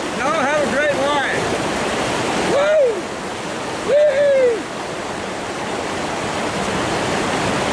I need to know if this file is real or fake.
real